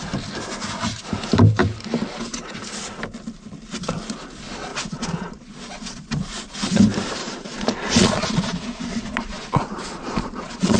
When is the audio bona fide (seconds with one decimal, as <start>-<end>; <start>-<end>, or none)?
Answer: 0.0-4.7; 6.0-7.2